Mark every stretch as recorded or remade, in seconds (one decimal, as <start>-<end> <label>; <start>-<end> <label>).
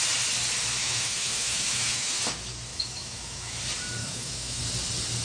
0.0-0.8 recorded; 0.8-2.2 remade; 2.2-2.7 recorded; 2.7-3.6 remade; 3.6-4.0 recorded; 4.0-4.6 remade; 4.6-5.2 recorded